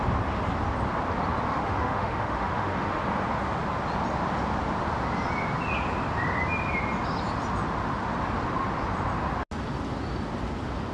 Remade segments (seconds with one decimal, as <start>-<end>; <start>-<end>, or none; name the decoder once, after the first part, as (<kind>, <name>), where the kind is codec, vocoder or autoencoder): 1.5-3.0 (autoencoder, DAC-VAE)